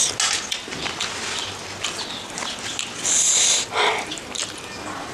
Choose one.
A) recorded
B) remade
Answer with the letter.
A